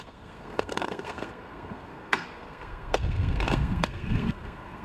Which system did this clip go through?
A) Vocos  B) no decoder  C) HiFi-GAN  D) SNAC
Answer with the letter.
D